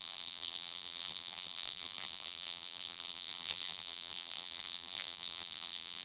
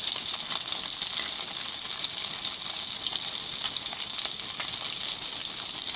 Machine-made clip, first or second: first